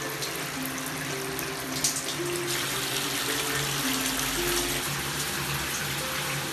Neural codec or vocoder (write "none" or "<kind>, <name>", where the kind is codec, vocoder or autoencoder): none